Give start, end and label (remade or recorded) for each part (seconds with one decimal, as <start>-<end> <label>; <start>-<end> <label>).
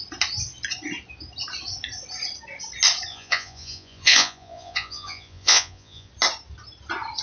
0.0-3.1 recorded; 3.1-6.1 remade; 6.1-7.2 recorded